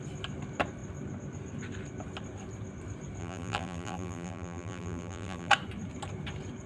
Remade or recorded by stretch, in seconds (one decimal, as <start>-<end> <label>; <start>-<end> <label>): 0.0-3.2 recorded; 3.2-5.5 remade; 5.5-6.7 recorded